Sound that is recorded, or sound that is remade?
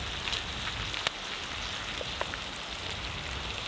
recorded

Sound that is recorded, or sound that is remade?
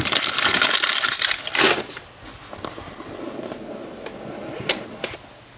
recorded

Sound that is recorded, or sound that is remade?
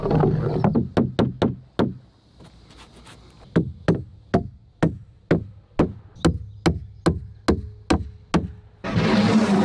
recorded